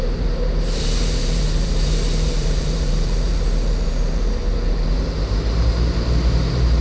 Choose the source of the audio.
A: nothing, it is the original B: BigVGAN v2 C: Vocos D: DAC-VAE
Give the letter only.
B